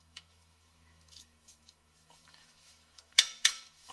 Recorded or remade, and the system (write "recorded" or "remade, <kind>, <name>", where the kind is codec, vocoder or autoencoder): remade, autoencoder, DAC-VAE